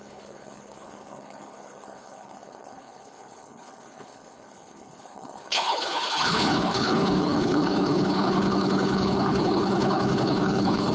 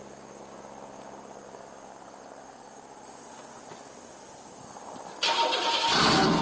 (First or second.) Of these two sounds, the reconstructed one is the first